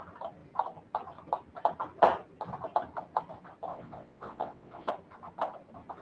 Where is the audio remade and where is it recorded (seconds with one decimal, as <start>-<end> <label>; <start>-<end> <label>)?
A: 0.0-3.7 recorded; 3.7-4.9 remade; 4.9-6.0 recorded